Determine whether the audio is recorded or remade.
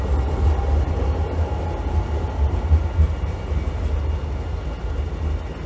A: recorded